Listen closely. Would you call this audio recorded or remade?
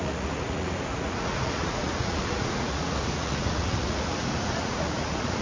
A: remade